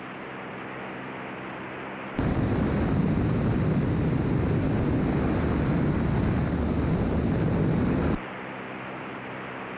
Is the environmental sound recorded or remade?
recorded